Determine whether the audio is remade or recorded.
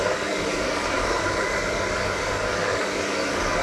remade